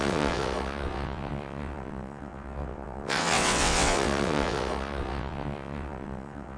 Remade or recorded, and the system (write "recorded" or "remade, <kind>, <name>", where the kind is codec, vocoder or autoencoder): remade, vocoder, WaveNeXt